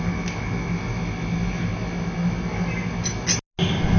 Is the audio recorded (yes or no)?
yes